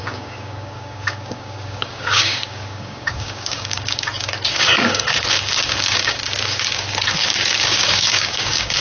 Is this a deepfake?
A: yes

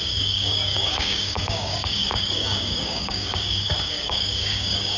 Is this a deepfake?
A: yes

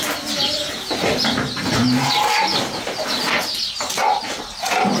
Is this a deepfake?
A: no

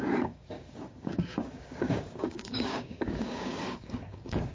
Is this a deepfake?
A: yes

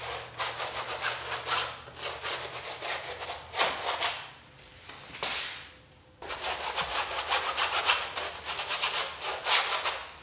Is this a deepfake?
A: no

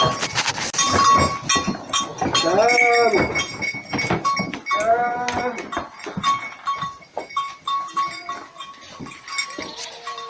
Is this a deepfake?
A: no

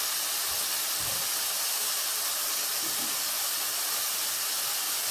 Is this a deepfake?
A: no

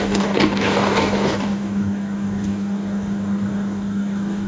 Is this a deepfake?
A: yes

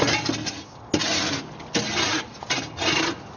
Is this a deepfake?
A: no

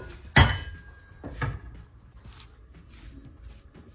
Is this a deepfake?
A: no